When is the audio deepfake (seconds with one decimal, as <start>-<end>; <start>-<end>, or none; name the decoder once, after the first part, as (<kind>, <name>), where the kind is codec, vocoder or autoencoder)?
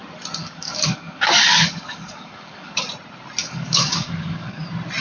0.4-2.8 (codec, DAC); 3.4-4.6